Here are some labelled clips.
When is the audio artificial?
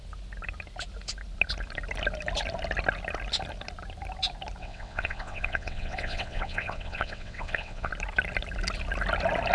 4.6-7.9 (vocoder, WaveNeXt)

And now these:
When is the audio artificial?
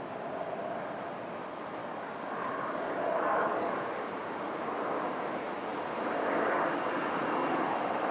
1.8-3.8 (codec, DAC)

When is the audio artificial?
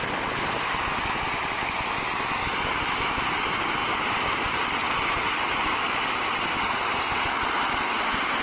none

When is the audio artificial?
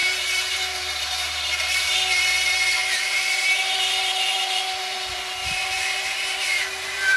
0.0-1.9 (vocoder, BigVGAN v2); 2.8-7.2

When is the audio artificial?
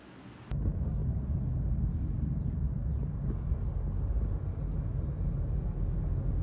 none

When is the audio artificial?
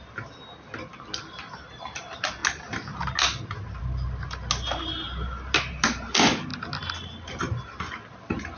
none